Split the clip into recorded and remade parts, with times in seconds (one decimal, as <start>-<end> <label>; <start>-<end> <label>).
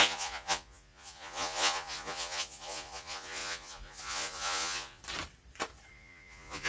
0.0-5.0 remade; 5.0-5.9 recorded; 5.9-6.7 remade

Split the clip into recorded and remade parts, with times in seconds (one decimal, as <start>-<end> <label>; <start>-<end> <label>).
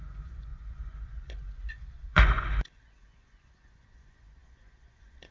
0.0-5.3 remade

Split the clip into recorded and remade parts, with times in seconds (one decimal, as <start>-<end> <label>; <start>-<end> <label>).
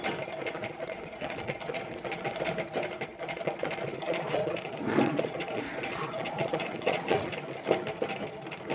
0.0-0.4 recorded; 0.4-2.4 remade; 2.4-3.1 recorded; 3.1-7.3 remade; 7.3-8.7 recorded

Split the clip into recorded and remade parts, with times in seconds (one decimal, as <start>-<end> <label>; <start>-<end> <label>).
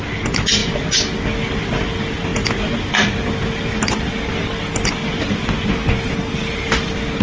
0.0-7.2 recorded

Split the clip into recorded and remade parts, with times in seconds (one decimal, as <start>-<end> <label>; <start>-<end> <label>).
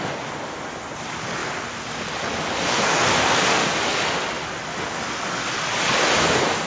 0.0-6.7 recorded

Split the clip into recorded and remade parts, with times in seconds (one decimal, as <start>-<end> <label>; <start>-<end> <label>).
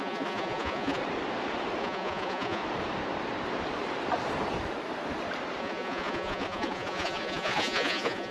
0.0-1.0 remade; 1.0-1.8 recorded; 1.8-2.6 remade; 2.6-5.6 recorded; 5.6-8.3 remade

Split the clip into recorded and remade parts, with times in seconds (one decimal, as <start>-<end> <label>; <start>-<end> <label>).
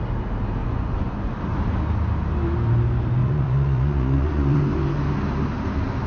0.0-0.6 recorded; 0.6-1.3 remade; 1.3-3.2 recorded; 3.2-4.6 remade; 4.6-6.1 recorded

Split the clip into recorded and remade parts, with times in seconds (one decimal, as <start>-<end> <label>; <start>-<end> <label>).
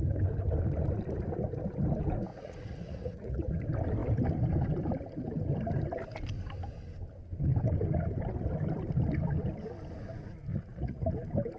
0.0-2.3 recorded; 2.3-3.5 remade; 3.5-10.5 recorded; 10.5-11.1 remade; 11.1-11.6 recorded